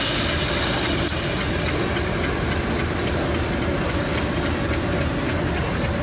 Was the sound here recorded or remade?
recorded